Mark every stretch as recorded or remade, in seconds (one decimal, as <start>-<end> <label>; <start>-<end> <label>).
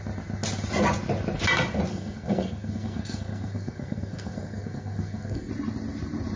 0.0-1.9 recorded; 1.9-5.5 remade; 5.5-6.4 recorded